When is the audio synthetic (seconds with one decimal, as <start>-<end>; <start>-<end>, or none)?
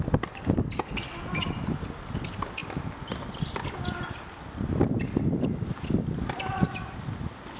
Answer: none